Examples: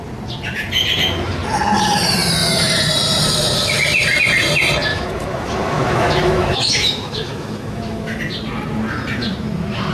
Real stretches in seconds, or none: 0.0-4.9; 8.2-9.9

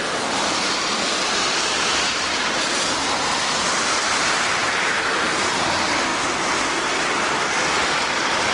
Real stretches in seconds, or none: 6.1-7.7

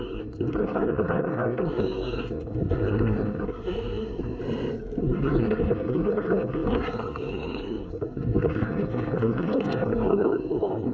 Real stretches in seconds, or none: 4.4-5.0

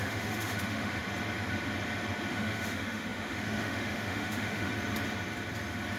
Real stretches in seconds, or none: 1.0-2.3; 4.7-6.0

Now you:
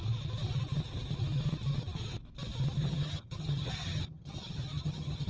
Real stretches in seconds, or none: 0.0-2.8

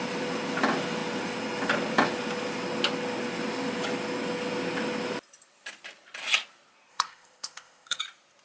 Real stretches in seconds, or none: 0.0-6.9; 8.0-8.4